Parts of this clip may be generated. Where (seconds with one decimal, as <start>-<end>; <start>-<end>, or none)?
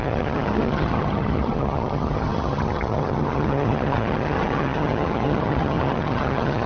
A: 0.0-6.7